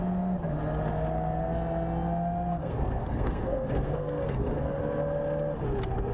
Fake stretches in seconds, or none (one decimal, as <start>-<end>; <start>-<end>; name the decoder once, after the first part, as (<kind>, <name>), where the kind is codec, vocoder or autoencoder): 2.5-4.8 (codec, SNAC)